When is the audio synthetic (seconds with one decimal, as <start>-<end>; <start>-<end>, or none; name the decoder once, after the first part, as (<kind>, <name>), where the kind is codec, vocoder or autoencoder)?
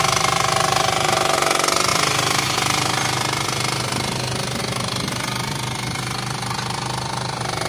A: none